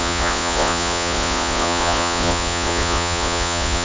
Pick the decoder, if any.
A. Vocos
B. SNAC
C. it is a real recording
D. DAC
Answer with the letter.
A